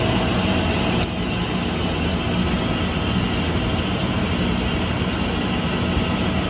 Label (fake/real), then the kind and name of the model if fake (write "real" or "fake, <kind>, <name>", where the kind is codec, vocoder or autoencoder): real